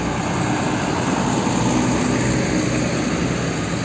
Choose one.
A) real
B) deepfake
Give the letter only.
A